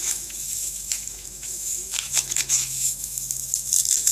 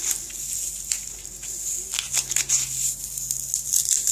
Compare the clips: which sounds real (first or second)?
second